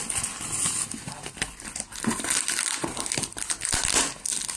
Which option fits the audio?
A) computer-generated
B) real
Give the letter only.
B